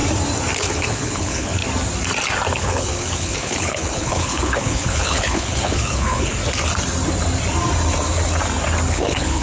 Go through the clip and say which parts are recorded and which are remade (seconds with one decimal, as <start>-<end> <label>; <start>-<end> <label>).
0.0-0.6 recorded; 0.6-1.6 remade; 1.6-2.6 recorded; 2.6-6.4 remade; 6.4-8.9 recorded; 8.9-9.4 remade